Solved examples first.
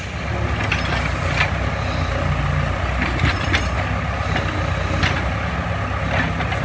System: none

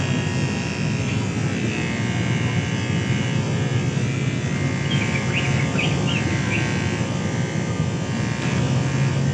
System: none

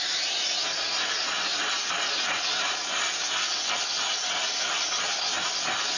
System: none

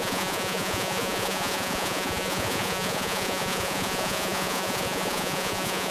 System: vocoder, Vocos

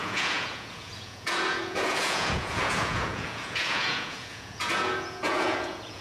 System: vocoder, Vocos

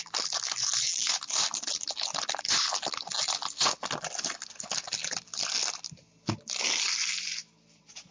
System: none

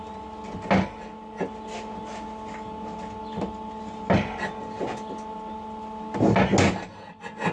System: none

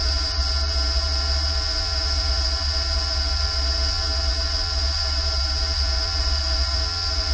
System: vocoder, Vocos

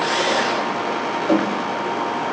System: none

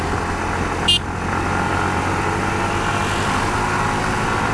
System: none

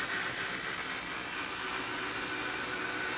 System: none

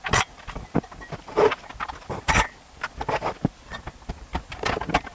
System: none